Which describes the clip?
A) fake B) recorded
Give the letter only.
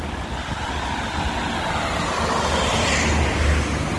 B